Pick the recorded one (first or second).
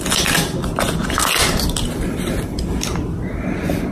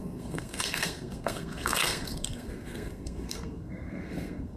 first